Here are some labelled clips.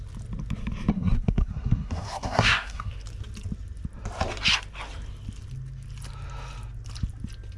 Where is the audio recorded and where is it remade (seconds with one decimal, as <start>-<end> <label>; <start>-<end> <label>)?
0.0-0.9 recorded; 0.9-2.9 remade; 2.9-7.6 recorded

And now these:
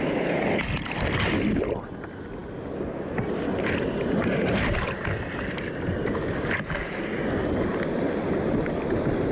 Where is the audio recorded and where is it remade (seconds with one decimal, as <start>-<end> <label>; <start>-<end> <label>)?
0.0-9.3 recorded

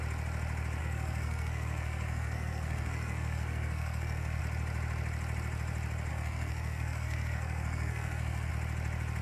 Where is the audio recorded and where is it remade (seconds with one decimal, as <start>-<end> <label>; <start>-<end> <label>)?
0.0-0.8 recorded; 0.8-4.4 remade; 4.4-6.1 recorded; 6.1-8.5 remade; 8.5-9.2 recorded